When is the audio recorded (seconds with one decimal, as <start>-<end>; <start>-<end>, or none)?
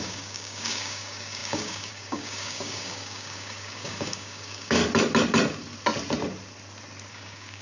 4.8-7.1